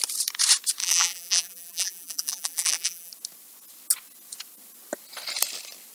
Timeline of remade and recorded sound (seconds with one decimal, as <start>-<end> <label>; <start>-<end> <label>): 0.0-0.8 recorded; 0.8-3.1 remade; 3.1-5.9 recorded